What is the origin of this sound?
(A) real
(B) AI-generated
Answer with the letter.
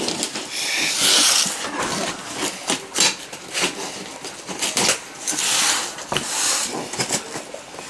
A